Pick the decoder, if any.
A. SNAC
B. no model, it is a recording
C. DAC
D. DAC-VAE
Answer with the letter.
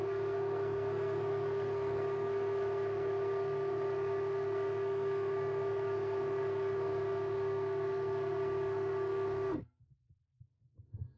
A